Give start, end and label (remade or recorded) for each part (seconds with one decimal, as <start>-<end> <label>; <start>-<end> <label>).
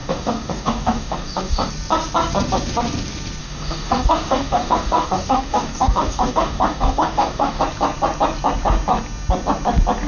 0.0-1.7 remade; 1.7-3.4 recorded; 3.4-7.6 remade; 7.6-10.1 recorded